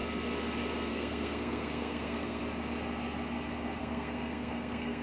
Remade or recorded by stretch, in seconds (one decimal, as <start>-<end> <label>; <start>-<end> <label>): 0.0-0.9 recorded; 0.9-2.4 remade; 2.4-3.8 recorded; 3.8-5.0 remade